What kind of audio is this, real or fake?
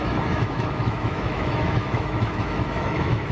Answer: fake